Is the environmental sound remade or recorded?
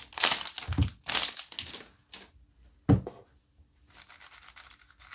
recorded